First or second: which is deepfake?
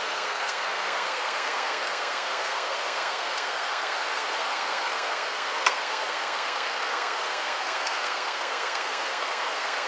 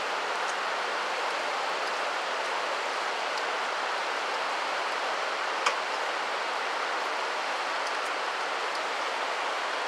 first